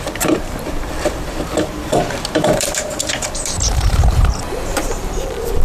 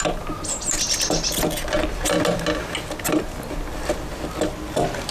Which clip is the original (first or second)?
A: second